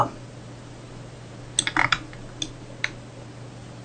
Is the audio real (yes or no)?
yes